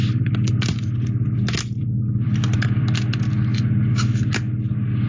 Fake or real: real